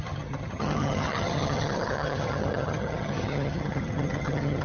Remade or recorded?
remade